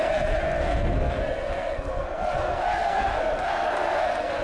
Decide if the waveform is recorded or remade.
remade